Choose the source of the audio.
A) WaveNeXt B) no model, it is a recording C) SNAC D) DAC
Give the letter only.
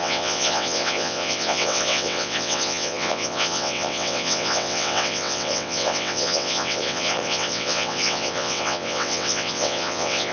A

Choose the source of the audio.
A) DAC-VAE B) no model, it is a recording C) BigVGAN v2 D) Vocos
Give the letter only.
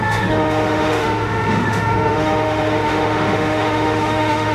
A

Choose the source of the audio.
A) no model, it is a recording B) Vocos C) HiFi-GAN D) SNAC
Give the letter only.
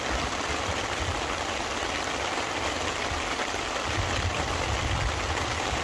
A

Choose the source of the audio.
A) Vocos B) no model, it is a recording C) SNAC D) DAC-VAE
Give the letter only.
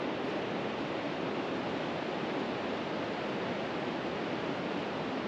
B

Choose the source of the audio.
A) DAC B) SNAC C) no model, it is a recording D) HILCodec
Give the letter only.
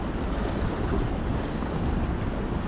C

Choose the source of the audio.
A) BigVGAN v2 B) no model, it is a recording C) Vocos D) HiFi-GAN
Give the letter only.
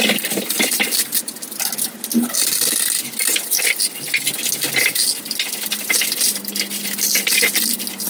B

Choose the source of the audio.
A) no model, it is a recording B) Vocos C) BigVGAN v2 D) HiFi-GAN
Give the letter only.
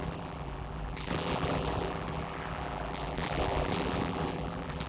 C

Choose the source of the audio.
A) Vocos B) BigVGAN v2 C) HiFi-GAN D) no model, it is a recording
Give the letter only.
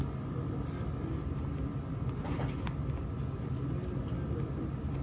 D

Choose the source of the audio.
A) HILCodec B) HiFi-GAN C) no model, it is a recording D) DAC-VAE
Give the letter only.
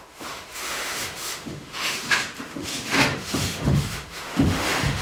D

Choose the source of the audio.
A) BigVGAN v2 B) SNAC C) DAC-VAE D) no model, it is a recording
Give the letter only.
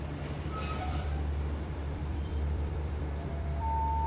A